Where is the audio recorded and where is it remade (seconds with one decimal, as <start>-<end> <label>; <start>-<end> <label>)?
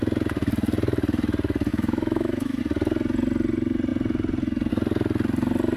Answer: 0.0-1.7 recorded; 1.7-2.6 remade; 2.6-5.8 recorded